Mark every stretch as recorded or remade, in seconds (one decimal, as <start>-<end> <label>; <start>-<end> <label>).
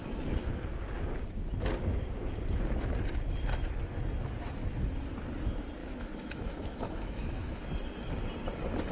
0.0-5.8 recorded; 5.8-7.6 remade; 7.6-8.9 recorded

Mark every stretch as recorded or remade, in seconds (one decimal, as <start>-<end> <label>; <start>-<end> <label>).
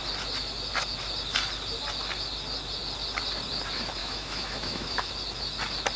0.0-4.0 recorded; 4.0-5.1 remade; 5.1-6.0 recorded